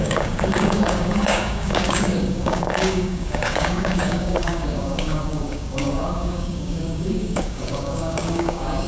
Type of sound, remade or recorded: remade